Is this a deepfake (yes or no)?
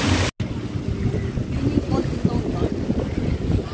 no